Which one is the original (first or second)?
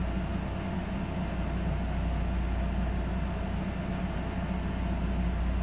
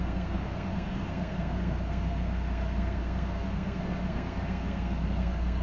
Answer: first